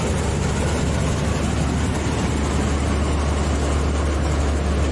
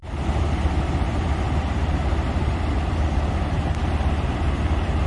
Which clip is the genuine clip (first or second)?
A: first